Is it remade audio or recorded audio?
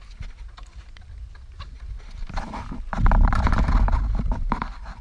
recorded